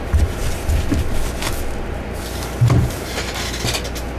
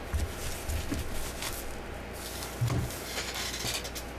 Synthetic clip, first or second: first